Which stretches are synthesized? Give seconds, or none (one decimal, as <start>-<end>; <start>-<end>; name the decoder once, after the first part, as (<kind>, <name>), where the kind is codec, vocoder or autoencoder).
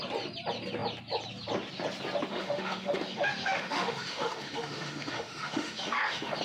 2.3-6.4 (autoencoder, DAC-VAE)